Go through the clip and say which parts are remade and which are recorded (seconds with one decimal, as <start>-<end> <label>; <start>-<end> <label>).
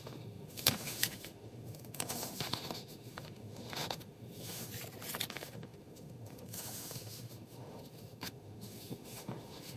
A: 0.0-4.7 remade; 4.7-5.3 recorded; 5.3-9.8 remade